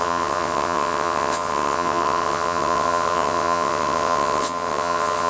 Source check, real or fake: fake